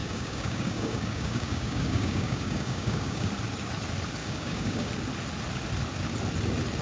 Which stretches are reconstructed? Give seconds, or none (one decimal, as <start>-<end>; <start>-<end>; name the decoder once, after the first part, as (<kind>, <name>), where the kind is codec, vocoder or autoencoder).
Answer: 0.0-3.3 (codec, DAC); 4.2-4.9